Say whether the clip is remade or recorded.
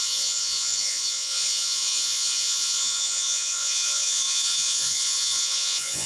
remade